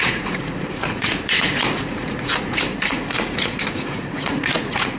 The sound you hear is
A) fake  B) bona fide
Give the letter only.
A